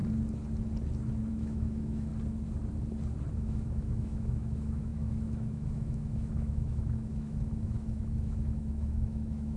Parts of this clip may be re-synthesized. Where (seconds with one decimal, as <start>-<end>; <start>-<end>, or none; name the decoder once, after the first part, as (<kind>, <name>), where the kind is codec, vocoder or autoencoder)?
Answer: 1.3-2.1 (autoencoder, DAC-VAE); 3.3-9.6